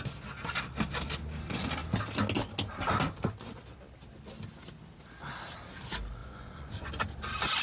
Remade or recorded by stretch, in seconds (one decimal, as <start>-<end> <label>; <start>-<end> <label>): 0.0-6.2 recorded; 6.2-6.9 remade; 6.9-7.6 recorded